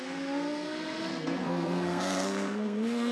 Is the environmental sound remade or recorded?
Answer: remade